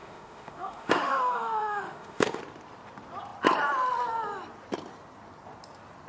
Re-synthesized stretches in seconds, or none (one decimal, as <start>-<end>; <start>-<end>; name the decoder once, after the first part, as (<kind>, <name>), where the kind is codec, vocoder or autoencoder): 0.0-2.4 (autoencoder, DAC-VAE)